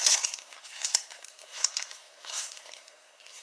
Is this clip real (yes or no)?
no